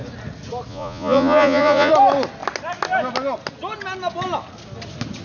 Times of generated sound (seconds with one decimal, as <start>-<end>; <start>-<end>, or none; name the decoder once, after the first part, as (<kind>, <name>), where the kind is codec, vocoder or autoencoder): 0.7-1.9 (vocoder, Vocos)